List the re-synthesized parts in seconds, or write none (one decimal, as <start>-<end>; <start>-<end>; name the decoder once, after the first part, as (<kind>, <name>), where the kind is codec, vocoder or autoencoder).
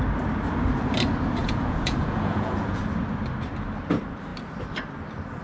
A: 1.4-2.8 (vocoder, Vocos)